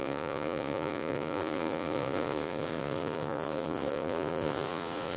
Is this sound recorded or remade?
remade